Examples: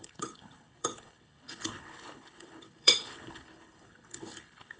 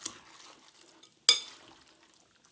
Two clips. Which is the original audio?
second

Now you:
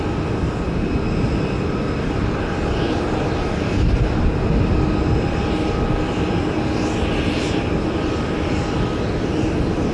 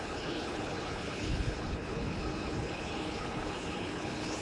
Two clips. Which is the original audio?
first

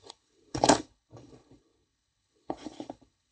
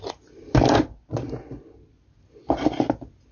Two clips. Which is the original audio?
second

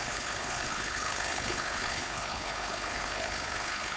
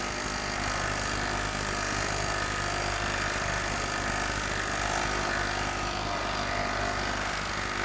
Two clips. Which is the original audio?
second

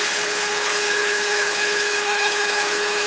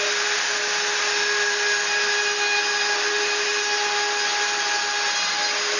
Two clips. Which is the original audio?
second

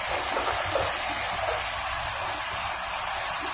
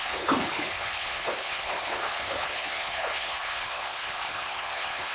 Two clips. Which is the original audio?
first